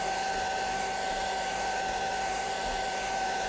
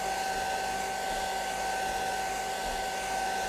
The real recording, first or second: second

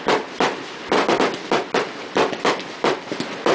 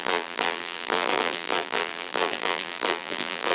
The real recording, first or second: first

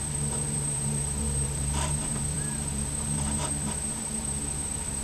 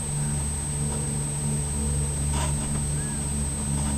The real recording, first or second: second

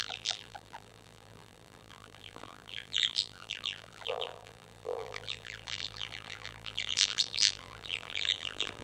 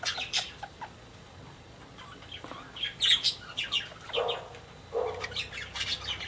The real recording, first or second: second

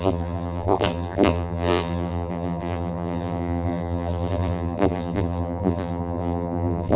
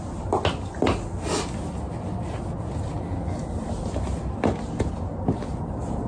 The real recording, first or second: second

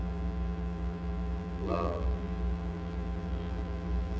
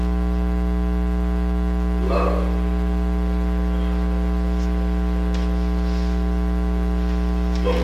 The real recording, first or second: second